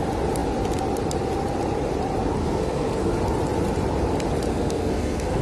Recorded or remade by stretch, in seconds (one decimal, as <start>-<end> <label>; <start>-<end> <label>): 0.0-2.4 recorded; 2.4-3.1 remade; 3.1-4.5 recorded; 4.5-5.4 remade